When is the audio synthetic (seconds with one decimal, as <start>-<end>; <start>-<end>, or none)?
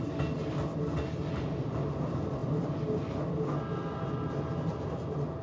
none